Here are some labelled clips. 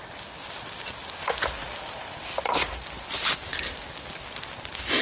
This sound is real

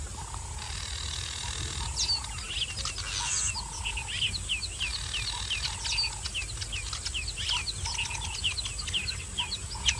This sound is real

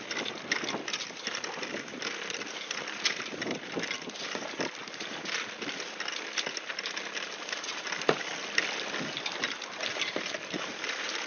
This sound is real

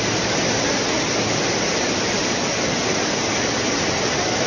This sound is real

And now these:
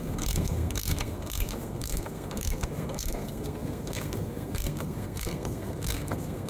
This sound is fake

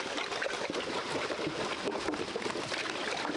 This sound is real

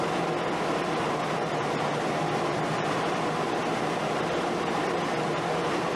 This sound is real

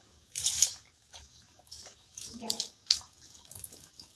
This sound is fake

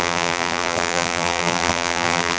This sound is fake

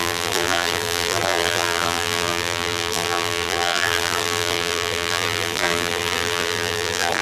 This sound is fake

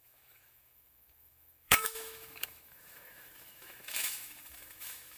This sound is fake